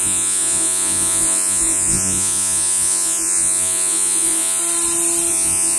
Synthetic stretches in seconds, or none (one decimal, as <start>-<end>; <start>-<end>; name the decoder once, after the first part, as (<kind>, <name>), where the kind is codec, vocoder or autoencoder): 0.0-4.6 (vocoder, Vocos); 5.3-5.8